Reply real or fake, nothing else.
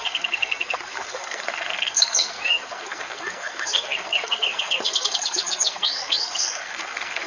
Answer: fake